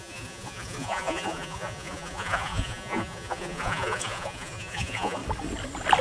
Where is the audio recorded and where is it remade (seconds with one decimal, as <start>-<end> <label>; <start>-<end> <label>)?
0.0-5.2 remade; 5.2-6.0 recorded